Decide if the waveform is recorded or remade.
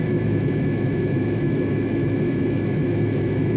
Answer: remade